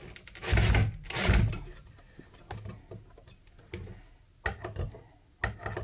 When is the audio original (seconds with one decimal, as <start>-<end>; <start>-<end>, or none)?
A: 0.0-5.8